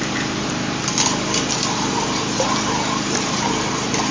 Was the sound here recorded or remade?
remade